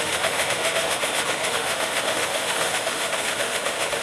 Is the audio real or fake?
fake